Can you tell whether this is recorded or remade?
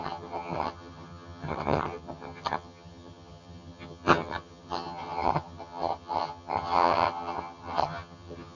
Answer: remade